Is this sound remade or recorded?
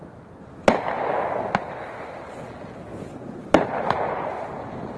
recorded